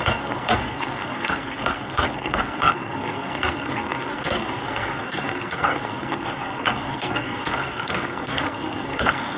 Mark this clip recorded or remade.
remade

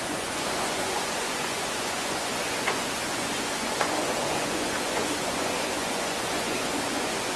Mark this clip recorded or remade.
remade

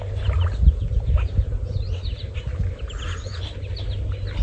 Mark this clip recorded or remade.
recorded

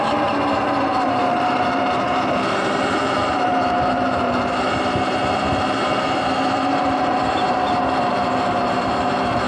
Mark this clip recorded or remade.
remade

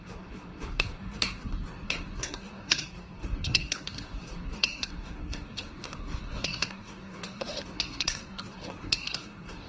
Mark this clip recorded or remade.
remade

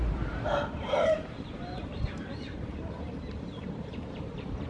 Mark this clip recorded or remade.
remade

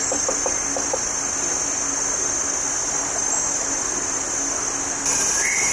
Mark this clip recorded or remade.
recorded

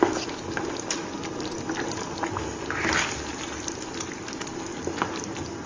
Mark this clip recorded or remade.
recorded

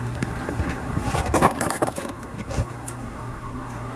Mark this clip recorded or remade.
remade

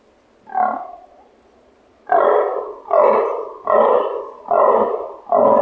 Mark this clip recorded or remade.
recorded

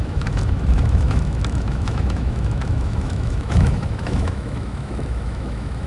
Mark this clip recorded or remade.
remade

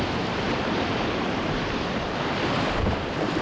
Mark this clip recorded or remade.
remade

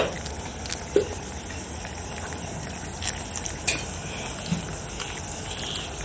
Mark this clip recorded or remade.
recorded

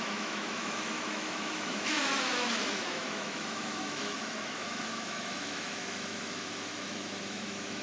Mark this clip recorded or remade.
remade